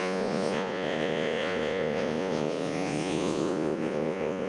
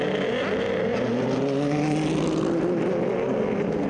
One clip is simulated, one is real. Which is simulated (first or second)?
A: first